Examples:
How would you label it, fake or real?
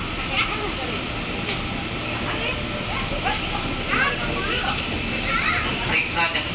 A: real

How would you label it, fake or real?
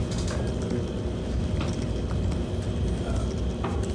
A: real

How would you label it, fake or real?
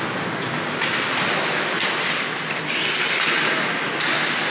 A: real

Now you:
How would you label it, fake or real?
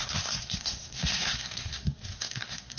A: fake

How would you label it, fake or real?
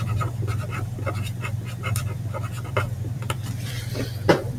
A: fake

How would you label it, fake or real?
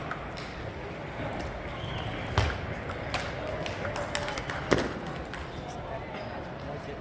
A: real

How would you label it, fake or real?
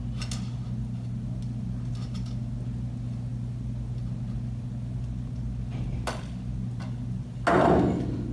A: real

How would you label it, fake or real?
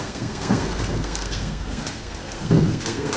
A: fake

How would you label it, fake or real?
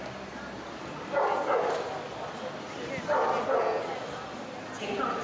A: real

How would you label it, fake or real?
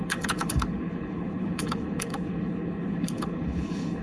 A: fake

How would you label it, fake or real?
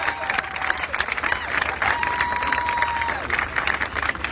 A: real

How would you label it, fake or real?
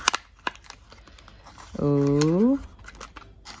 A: real